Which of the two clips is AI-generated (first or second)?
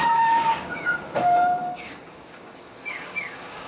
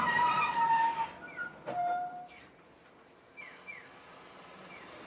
first